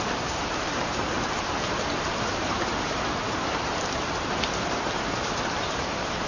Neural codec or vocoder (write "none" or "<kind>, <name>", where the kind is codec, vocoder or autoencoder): vocoder, BigVGAN v2